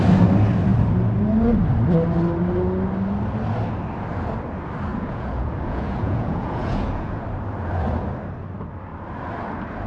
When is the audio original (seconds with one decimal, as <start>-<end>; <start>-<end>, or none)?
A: 0.0-4.9; 7.2-9.9